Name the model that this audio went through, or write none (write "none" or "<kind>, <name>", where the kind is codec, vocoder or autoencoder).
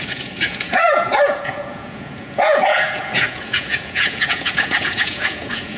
vocoder, Vocos